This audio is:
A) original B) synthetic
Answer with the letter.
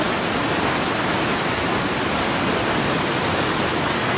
A